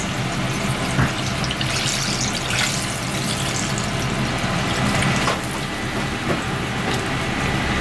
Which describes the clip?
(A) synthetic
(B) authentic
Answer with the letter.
B